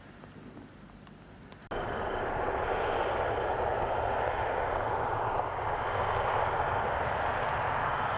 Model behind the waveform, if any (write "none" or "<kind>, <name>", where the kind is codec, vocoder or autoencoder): none